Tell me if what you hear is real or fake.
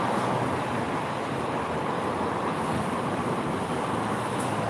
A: real